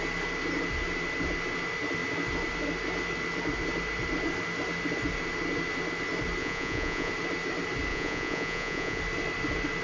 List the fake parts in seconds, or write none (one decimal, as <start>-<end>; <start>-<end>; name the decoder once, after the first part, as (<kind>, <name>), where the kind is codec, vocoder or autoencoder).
6.4-7.1 (vocoder, Vocos); 7.9-9.0